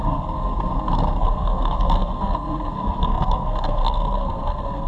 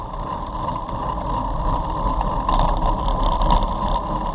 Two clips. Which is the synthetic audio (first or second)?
first